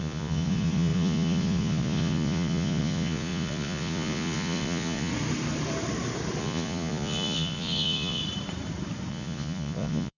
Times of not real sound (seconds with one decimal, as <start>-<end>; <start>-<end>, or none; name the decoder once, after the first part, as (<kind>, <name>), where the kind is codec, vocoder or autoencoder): 0.0-5.1 (vocoder, Vocos); 6.4-8.2; 9.1-10.2